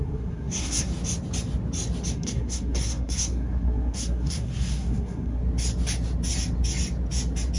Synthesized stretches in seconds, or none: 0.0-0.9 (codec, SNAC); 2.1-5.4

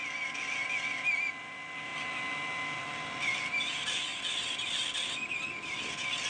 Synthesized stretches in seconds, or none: none

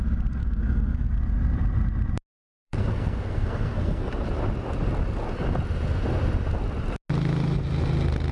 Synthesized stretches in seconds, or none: 0.4-1.2 (codec, SNAC); 2.6-4.1

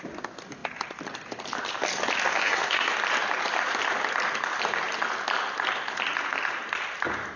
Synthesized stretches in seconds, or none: 2.3-2.9 (codec, SNAC)